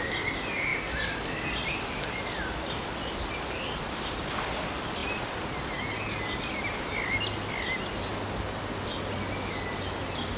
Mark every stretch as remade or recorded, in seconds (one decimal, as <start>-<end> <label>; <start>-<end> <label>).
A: 0.0-10.4 recorded